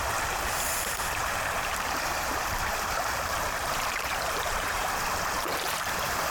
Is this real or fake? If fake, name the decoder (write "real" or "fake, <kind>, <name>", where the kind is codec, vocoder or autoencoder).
fake, vocoder, BigVGAN v2